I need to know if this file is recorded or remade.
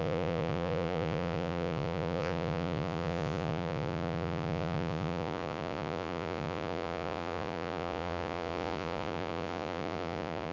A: remade